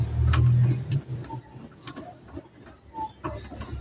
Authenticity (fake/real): real